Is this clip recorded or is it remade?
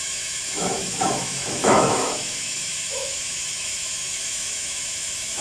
remade